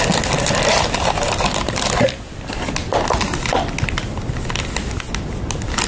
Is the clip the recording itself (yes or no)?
yes